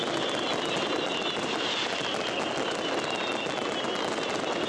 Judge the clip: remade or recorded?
recorded